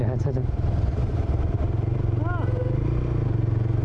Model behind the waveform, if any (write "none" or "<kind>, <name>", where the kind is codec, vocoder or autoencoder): none